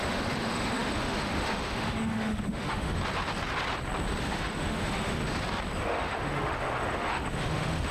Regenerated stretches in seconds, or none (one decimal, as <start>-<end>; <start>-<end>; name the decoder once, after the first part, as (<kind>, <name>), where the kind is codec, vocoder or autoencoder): 0.0-3.0 (autoencoder, DAC-VAE); 4.2-5.2; 5.8-7.9